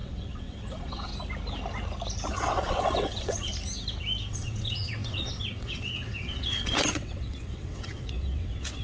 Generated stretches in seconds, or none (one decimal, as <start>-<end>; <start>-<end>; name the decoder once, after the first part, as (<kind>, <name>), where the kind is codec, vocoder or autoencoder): 0.0-1.1 (vocoder, WaveNeXt); 2.3-3.5; 4.3-8.8